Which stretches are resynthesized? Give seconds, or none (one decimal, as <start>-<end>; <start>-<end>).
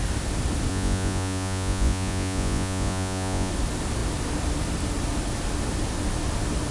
0.7-3.5